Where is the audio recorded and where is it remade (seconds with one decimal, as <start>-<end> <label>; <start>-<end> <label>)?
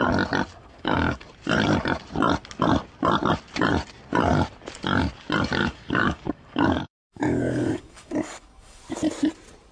0.0-0.6 recorded; 0.6-1.3 remade; 1.3-5.6 recorded; 5.6-8.8 remade; 8.8-9.7 recorded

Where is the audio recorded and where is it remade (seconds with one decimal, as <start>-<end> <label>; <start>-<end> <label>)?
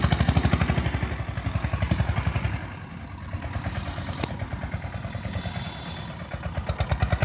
0.0-7.2 recorded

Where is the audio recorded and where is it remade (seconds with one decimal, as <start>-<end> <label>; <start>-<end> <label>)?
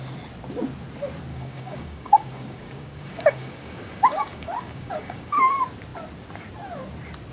0.0-1.3 recorded; 1.3-5.5 remade; 5.5-7.3 recorded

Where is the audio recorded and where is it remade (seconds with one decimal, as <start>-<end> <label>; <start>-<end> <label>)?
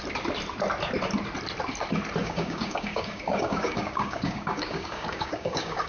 0.0-2.2 recorded; 2.2-5.9 remade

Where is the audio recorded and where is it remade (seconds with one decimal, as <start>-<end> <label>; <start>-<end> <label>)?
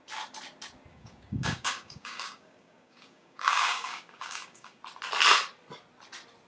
0.0-0.9 recorded; 0.9-4.8 remade; 4.8-6.5 recorded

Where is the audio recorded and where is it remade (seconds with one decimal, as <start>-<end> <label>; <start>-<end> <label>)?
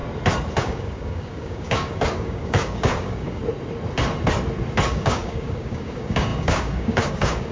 0.0-0.6 recorded; 0.6-3.4 remade; 3.4-4.9 recorded; 4.9-7.5 remade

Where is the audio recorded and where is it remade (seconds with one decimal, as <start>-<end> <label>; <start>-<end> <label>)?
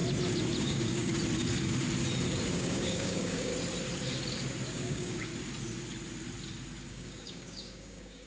0.0-0.6 recorded; 0.6-1.1 remade; 1.1-2.5 recorded; 2.5-3.5 remade; 3.5-4.7 recorded; 4.7-5.3 remade; 5.3-6.9 recorded; 6.9-8.3 remade